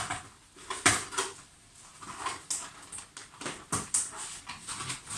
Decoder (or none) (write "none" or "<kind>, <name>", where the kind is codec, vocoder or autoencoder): none